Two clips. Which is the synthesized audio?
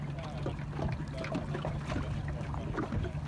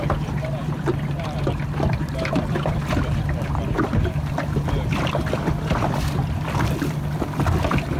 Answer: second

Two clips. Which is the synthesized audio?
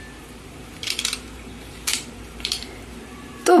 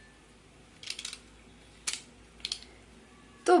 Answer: first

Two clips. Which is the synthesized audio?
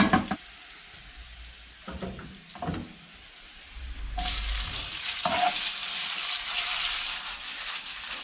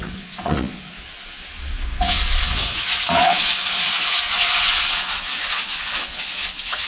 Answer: second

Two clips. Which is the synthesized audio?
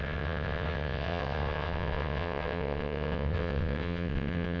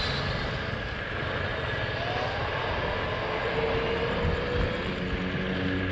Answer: first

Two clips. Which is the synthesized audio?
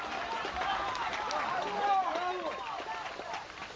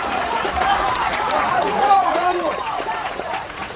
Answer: second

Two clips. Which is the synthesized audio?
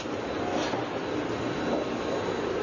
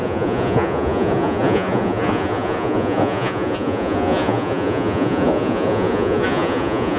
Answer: second